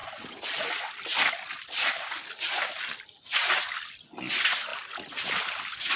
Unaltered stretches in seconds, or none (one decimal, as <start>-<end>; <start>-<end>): 0.0-6.0